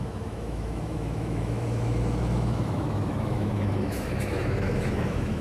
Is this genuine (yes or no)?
no